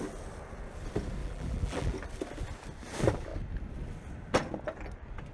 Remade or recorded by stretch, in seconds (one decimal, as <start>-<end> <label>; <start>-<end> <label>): 0.0-1.2 recorded; 1.2-1.9 remade; 1.9-5.3 recorded